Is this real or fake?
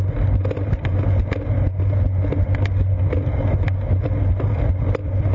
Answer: real